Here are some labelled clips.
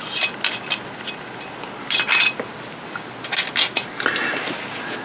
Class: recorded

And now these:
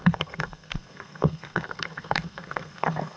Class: remade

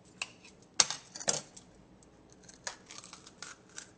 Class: recorded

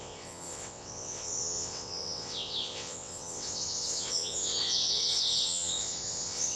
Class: remade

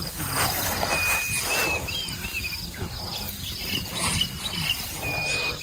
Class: recorded